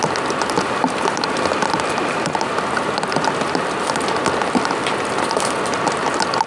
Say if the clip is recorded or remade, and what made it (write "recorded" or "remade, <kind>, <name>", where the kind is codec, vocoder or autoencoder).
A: recorded